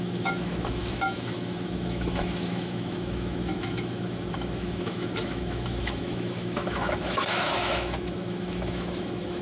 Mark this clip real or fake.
fake